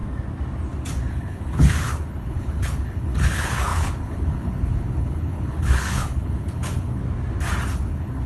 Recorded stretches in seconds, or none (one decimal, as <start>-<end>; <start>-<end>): 0.0-1.1; 7.0-7.7

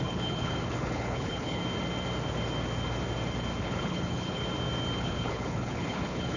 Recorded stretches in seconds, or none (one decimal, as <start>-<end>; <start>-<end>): 1.6-3.6; 4.4-5.0

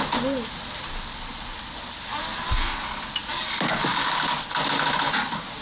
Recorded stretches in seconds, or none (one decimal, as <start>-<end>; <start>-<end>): 0.0-5.6

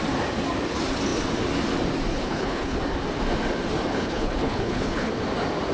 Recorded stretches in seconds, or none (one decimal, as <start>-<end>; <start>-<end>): 0.0-2.1; 2.8-3.9; 5.1-5.7